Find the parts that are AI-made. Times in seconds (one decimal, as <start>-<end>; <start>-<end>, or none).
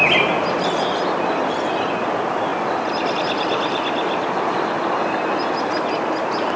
none